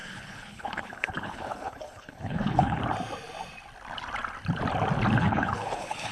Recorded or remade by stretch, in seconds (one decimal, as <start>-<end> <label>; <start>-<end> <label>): 0.0-2.8 remade; 2.8-5.2 recorded; 5.2-6.1 remade